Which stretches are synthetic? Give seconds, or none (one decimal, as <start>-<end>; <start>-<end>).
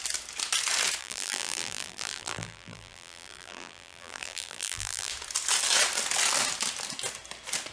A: 1.0-5.1